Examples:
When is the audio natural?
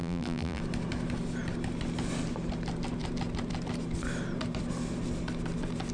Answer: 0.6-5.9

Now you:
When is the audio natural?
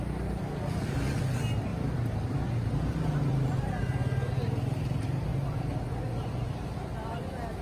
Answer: 0.0-5.3; 5.8-7.6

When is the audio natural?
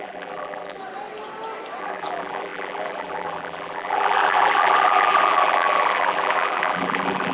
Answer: 0.8-1.8